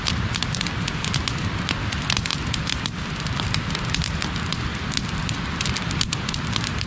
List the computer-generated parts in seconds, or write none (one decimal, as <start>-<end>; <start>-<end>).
4.7-6.1